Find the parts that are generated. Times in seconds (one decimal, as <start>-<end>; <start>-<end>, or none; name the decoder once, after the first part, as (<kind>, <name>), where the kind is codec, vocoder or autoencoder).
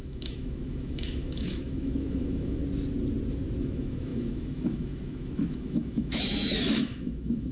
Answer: 0.0-2.6 (autoencoder, DAC-VAE); 3.6-7.5